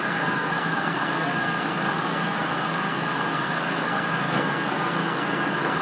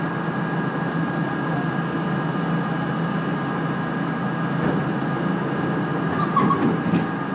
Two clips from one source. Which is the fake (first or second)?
first